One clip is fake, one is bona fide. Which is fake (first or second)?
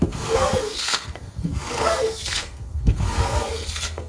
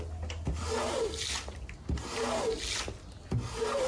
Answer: first